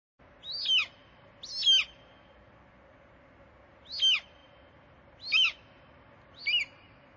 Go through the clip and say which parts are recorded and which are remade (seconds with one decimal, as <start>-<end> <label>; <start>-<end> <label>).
0.0-7.2 recorded